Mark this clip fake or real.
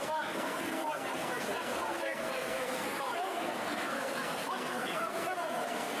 fake